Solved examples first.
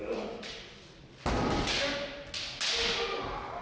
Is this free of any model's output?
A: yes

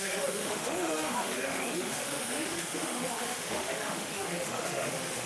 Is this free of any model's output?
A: no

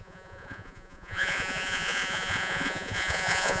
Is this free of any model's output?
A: no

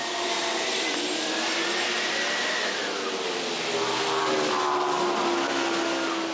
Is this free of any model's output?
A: yes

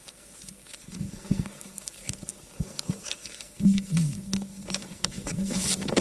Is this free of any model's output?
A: no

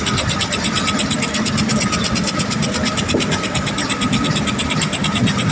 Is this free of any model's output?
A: yes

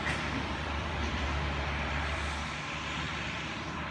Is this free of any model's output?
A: no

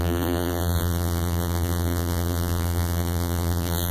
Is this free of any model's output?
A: no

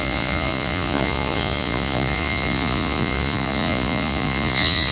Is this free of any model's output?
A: no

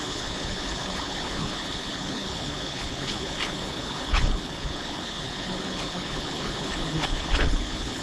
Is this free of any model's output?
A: no